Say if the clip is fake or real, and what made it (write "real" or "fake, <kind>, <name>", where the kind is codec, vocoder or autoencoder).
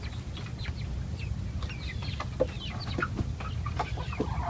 real